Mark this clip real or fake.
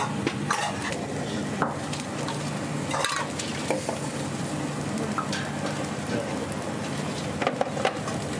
real